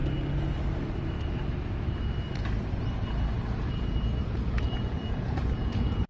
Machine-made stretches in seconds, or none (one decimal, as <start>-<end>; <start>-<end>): 3.7-6.1